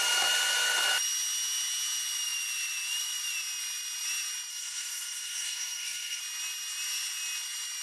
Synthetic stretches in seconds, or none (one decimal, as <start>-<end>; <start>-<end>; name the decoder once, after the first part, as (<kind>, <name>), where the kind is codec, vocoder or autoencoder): 4.5-6.2 (codec, SNAC)